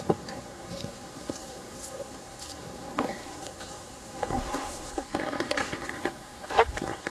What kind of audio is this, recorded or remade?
remade